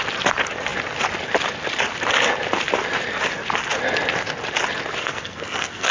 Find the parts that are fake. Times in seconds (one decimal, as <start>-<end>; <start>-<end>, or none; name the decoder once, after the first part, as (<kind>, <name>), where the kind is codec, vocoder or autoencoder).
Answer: 5.0-5.9 (codec, SNAC)